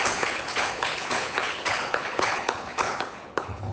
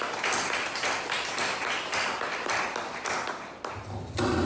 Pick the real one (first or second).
second